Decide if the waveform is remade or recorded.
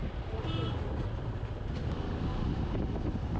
recorded